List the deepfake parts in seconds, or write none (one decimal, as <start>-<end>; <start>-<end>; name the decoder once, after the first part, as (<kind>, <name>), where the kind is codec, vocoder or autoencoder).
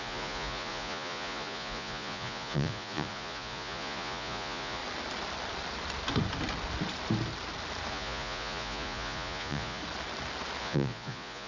0.0-4.8 (vocoder, Vocos); 7.9-9.8; 10.6-11.5